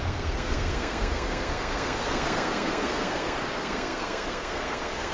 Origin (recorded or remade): remade